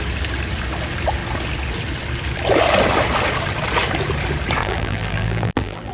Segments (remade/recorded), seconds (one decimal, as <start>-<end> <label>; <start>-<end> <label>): 0.0-4.6 recorded; 4.6-5.9 remade